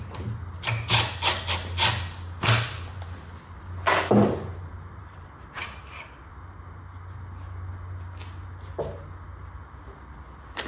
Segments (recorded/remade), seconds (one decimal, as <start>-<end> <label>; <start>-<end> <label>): 0.0-4.5 recorded; 4.5-5.7 remade; 5.7-10.7 recorded